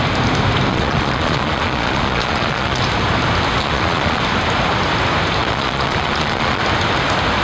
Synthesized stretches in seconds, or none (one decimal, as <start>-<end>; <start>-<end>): 0.7-2.8; 3.6-4.2; 5.4-6.6